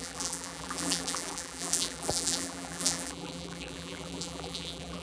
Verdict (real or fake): fake